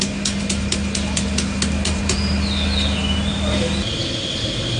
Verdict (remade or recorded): recorded